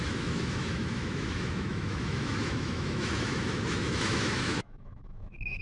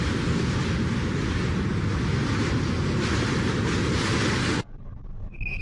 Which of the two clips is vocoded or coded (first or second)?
first